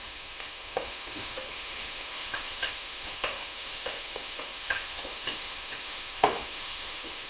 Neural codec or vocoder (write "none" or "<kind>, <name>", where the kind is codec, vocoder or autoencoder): autoencoder, DAC-VAE